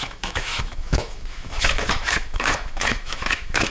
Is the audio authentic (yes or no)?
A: no